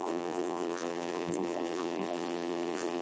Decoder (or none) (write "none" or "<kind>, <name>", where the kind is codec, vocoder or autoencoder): vocoder, BigVGAN v2